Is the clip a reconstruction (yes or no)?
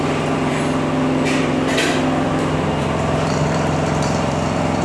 yes